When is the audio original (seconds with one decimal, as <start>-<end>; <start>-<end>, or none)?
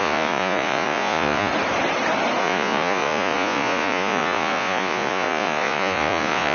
1.5-2.4